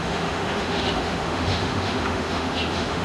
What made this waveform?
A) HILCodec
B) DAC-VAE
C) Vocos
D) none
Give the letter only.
B